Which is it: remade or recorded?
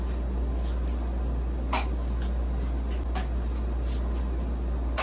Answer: recorded